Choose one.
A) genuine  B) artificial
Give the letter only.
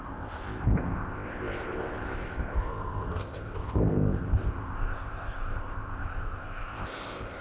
B